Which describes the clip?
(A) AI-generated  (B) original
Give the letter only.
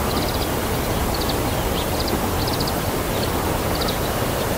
B